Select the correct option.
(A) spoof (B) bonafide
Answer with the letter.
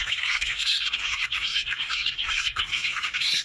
A